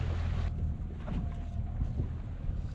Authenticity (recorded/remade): recorded